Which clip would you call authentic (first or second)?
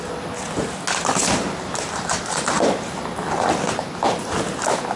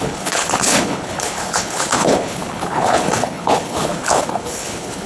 first